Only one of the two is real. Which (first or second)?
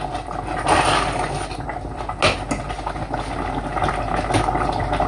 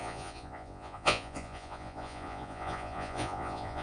first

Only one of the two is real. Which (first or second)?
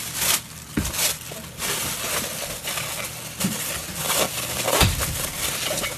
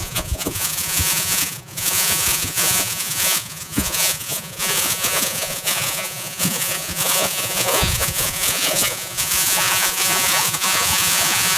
first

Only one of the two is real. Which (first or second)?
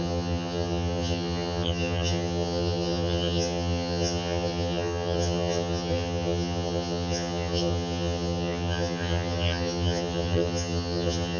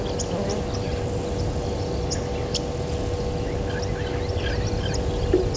second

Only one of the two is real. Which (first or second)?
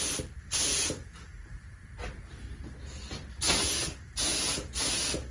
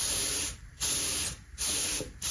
first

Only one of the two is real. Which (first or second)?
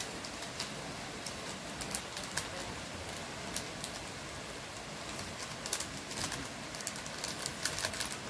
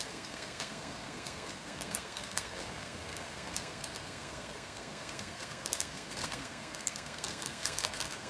first